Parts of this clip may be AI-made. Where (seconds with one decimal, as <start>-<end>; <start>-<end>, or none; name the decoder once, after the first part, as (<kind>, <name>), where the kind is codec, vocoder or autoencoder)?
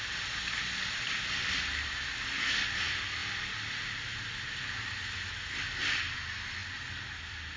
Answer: none